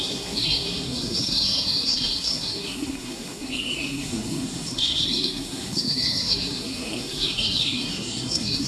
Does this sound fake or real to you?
fake